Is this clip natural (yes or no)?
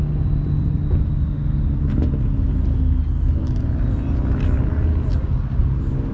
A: yes